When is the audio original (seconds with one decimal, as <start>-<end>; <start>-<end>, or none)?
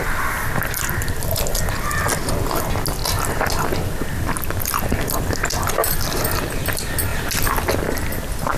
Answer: 0.0-8.6